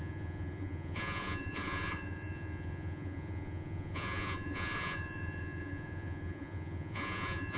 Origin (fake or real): fake